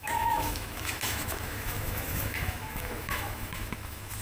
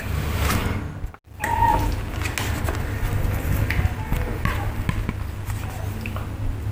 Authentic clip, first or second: second